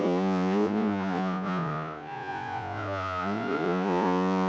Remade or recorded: remade